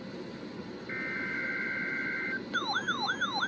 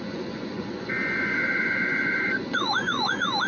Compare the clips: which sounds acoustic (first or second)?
first